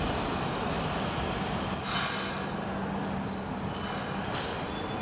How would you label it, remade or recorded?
recorded